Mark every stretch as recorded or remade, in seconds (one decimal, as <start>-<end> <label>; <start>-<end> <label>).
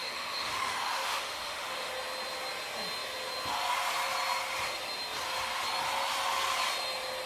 0.0-1.9 remade; 1.9-7.3 recorded